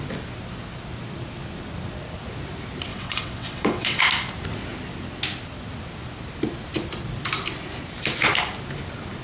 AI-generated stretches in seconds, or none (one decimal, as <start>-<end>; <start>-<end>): 2.9-4.0